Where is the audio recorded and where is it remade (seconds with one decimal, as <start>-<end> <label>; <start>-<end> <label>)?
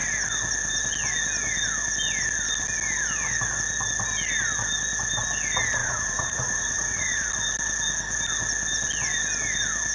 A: 0.0-5.8 recorded; 5.8-7.3 remade; 7.3-9.9 recorded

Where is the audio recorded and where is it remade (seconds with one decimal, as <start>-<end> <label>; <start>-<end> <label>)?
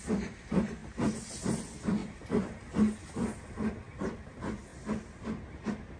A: 0.0-6.0 recorded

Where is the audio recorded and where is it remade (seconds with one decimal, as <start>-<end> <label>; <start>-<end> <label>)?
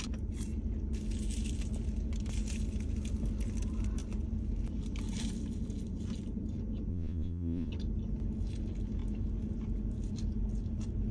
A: 0.0-6.9 recorded; 6.9-7.7 remade; 7.7-11.1 recorded